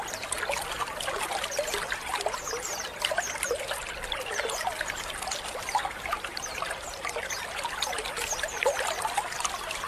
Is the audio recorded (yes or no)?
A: yes